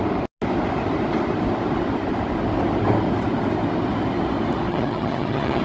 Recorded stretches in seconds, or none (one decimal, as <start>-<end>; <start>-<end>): 0.0-4.7